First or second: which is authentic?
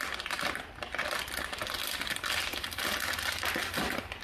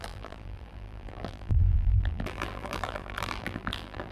first